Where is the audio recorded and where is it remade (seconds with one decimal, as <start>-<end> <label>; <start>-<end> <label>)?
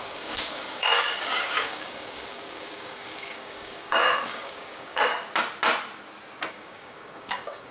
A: 0.0-5.1 remade; 5.1-6.5 recorded; 6.5-7.7 remade